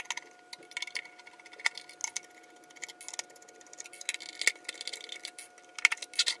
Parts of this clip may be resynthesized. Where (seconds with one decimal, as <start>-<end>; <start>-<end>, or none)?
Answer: none

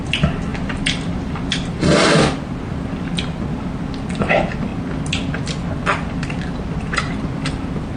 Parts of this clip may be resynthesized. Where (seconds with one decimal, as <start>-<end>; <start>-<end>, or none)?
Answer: 0.5-2.1

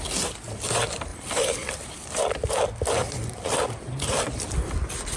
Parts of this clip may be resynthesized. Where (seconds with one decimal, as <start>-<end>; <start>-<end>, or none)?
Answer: 1.1-2.2; 3.0-4.5

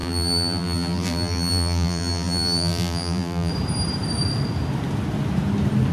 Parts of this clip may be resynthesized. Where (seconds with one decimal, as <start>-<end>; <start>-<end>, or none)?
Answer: 0.0-3.5

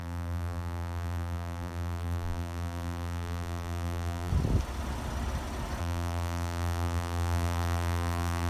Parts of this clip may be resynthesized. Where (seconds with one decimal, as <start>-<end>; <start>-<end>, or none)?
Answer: 0.0-4.3; 5.8-8.5